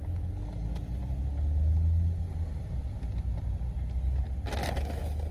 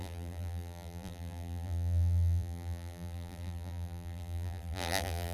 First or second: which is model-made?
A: second